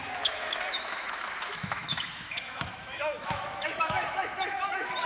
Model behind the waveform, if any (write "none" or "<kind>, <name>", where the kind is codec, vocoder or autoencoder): autoencoder, DAC-VAE